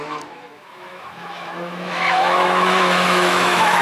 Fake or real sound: fake